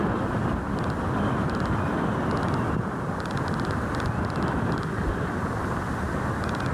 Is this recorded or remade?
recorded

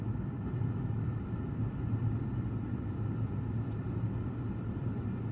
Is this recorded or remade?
recorded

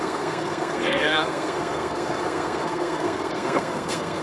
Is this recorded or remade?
remade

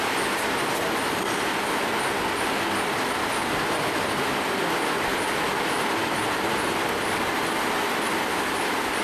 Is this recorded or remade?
recorded